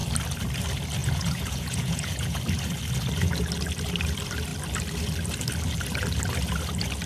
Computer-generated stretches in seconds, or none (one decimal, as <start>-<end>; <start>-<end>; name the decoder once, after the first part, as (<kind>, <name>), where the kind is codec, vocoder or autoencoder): 1.0-2.4 (vocoder, Vocos)